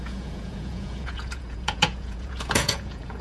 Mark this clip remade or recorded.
remade